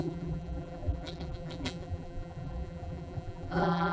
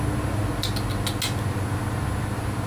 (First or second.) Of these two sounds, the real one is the second